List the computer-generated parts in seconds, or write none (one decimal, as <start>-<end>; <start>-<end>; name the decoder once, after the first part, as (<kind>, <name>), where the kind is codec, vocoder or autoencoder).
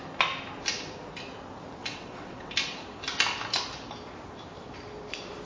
1.8-2.5 (vocoder, WaveNeXt)